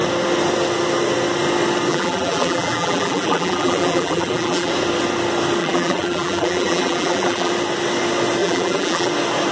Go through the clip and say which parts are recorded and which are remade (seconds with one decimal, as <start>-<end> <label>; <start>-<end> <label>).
0.0-1.9 recorded; 1.9-4.7 remade; 4.7-5.6 recorded; 5.6-7.5 remade; 7.5-8.4 recorded; 8.4-9.1 remade; 9.1-9.5 recorded